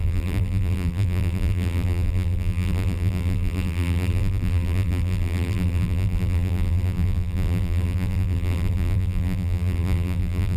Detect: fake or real fake